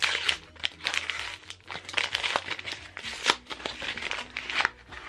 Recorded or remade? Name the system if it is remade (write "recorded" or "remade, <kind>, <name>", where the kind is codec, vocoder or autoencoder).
recorded